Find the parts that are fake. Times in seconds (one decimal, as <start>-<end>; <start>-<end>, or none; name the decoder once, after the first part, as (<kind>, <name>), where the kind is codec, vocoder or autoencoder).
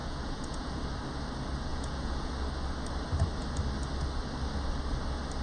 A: 0.0-0.8 (vocoder, Vocos); 1.7-2.3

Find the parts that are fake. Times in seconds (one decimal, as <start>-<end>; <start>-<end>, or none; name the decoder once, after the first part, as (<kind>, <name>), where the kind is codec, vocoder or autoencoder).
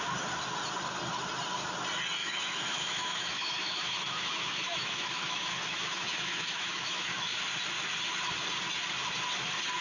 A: 2.2-7.4 (autoencoder, DAC-VAE)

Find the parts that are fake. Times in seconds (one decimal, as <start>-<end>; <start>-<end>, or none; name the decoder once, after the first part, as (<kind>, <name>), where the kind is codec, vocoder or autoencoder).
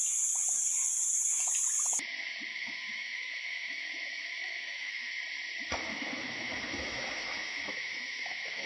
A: 2.5-5.1 (autoencoder, DAC-VAE); 5.9-8.7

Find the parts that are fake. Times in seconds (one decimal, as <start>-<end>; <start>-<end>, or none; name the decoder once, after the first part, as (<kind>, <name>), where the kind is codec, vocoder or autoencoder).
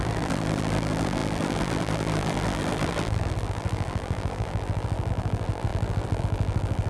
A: 0.0-6.9 (vocoder, BigVGAN v2)